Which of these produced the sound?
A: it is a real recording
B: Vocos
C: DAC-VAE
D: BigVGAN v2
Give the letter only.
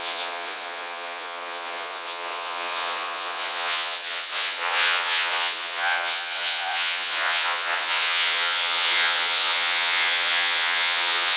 B